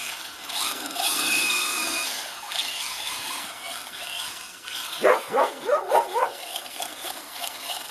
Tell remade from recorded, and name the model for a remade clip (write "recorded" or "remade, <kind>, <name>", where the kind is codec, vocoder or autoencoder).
remade, codec, SNAC